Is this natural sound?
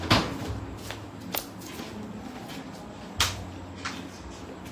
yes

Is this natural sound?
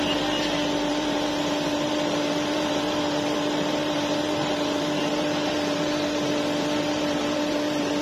no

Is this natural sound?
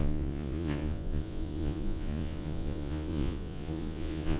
no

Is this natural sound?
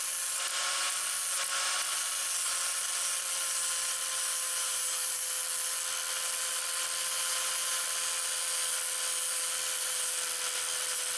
yes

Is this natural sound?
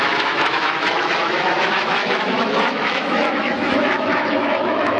no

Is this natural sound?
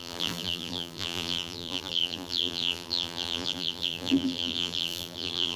no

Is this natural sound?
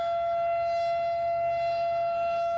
no